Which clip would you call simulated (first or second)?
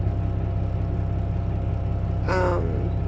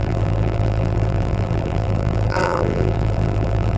second